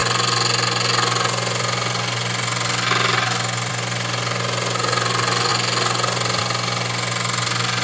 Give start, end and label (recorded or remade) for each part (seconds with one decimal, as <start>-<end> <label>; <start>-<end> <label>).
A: 0.0-7.8 recorded